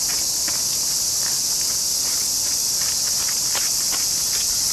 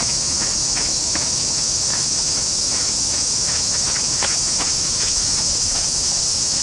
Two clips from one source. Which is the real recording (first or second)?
first